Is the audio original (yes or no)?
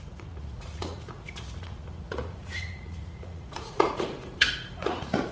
no